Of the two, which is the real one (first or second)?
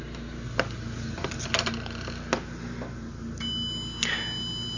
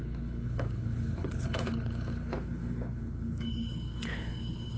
first